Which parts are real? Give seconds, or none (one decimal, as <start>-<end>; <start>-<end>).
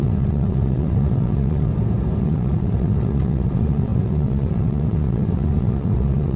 1.7-2.2